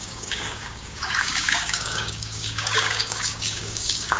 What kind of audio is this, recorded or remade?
remade